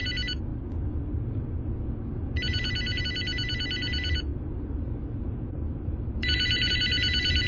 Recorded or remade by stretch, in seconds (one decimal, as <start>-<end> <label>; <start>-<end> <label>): 0.0-7.5 recorded